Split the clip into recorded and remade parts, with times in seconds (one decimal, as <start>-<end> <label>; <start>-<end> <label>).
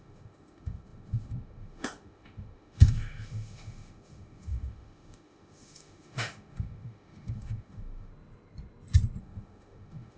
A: 0.0-8.1 remade; 8.1-9.2 recorded; 9.2-10.2 remade